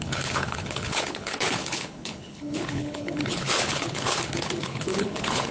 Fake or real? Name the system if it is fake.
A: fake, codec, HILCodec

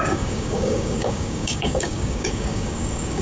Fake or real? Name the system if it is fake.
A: fake, codec, DAC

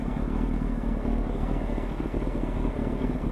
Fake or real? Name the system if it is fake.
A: fake, codec, SNAC